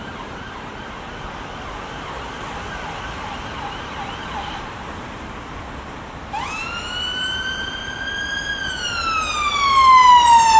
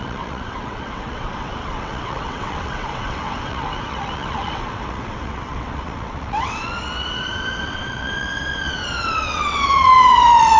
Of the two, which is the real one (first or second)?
first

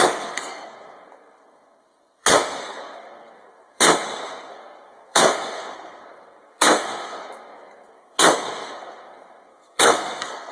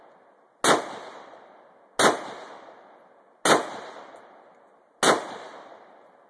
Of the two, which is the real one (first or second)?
second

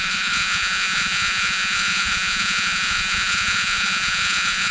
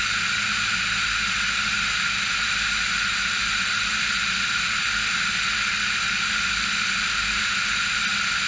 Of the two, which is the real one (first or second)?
second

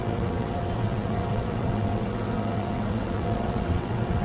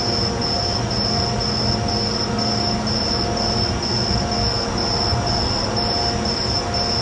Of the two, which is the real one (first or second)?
second